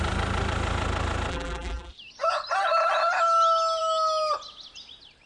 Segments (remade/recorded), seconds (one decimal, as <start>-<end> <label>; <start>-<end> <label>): 0.0-1.3 recorded; 1.3-1.9 remade; 1.9-5.3 recorded